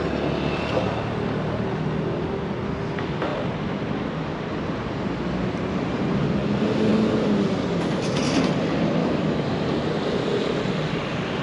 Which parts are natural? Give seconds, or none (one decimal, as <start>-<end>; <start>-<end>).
0.0-9.0; 9.5-11.4